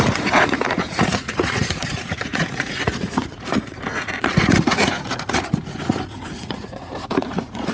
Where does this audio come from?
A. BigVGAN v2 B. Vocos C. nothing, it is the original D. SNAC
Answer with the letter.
B